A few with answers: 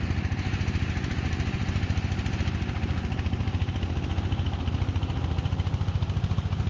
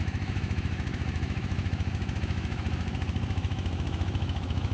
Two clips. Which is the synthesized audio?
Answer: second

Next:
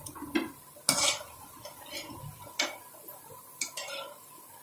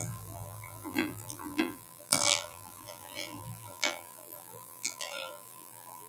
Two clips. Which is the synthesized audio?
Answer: second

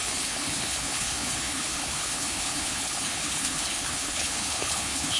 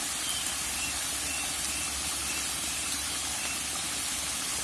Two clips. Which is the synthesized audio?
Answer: first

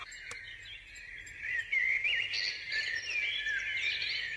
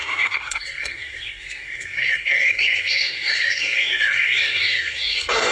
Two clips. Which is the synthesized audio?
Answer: second